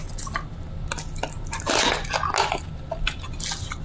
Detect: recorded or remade recorded